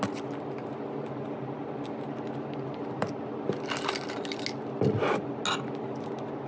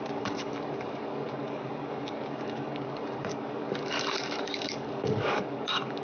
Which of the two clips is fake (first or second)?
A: second